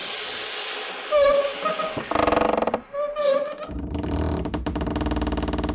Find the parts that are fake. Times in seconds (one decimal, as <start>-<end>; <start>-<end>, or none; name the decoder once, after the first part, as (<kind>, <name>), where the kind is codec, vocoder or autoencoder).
none